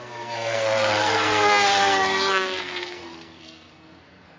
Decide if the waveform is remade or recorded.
remade